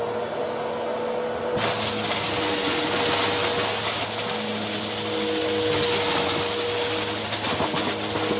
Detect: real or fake real